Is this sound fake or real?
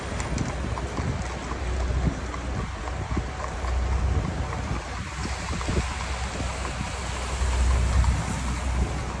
real